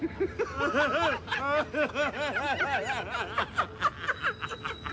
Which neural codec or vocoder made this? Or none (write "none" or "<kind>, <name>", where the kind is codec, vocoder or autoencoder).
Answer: none